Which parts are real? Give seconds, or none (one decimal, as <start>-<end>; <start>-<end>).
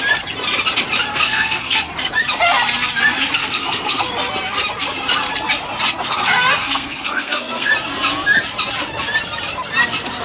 0.0-1.1; 1.9-3.4; 4.0-6.1; 7.7-10.2